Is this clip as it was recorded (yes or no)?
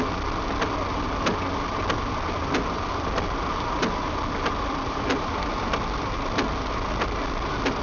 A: yes